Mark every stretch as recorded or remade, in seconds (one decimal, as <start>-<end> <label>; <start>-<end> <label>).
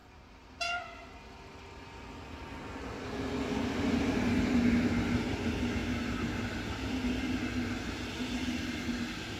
0.0-9.4 recorded